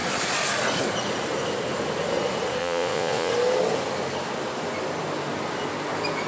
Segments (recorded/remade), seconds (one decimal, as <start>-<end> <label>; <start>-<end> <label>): 0.0-2.6 recorded; 2.6-3.3 remade; 3.3-6.3 recorded